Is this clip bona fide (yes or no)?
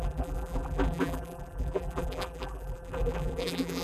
no